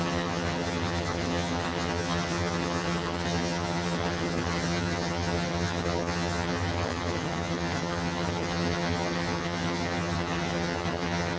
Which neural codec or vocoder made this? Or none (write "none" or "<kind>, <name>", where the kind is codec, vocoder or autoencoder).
vocoder, HiFi-GAN